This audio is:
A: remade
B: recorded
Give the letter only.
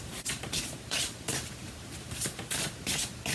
A